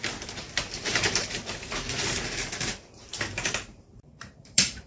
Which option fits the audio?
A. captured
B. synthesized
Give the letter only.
B